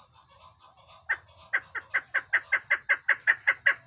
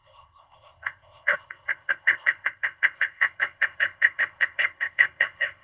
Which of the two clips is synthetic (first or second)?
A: second